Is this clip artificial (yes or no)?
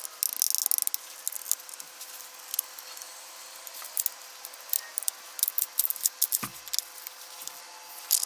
no